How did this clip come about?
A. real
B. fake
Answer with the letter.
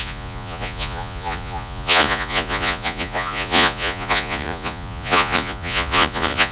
B